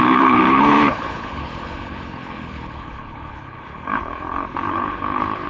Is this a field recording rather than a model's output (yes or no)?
no